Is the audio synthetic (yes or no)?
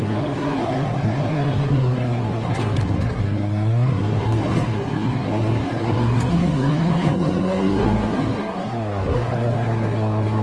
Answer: yes